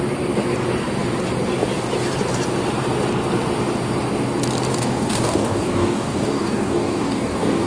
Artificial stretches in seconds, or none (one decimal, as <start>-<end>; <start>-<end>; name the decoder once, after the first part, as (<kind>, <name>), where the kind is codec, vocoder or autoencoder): 4.7-7.7 (codec, DAC)